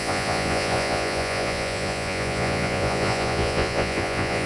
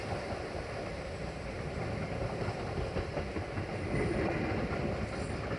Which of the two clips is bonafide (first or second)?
second